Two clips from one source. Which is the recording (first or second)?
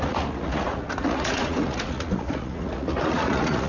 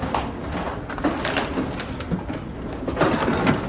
second